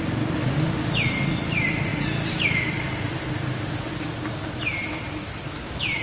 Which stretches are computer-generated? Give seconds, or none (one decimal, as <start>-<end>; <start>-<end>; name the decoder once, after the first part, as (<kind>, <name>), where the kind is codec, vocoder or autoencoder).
none